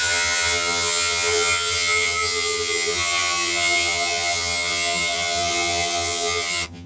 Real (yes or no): no